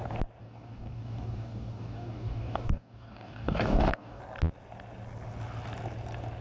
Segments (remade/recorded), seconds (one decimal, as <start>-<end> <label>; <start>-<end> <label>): 0.0-0.4 recorded; 0.4-4.2 remade; 4.2-6.4 recorded